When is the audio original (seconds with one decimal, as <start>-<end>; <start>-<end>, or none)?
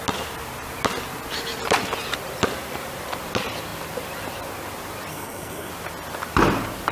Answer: 0.0-5.1; 5.7-6.9